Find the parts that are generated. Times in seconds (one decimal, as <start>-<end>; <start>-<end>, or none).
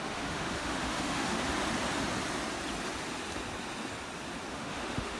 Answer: 0.0-1.4; 4.5-5.2